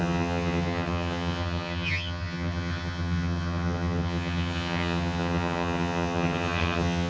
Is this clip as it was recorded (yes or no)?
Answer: no